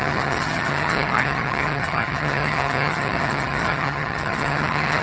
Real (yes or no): no